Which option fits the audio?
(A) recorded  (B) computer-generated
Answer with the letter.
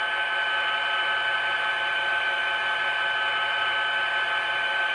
A